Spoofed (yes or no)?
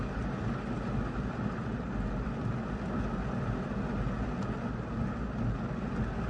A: no